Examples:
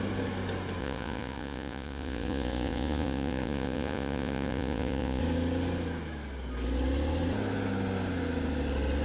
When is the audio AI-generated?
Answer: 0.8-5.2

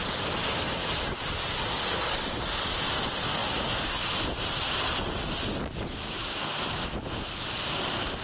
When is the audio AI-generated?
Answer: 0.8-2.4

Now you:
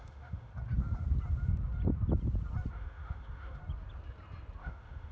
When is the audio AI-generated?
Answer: 0.0-0.5; 2.7-3.6; 4.6-5.1

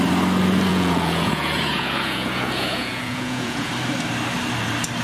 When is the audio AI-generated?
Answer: 0.7-3.7